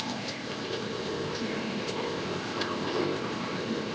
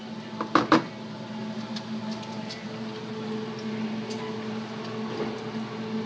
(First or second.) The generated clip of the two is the first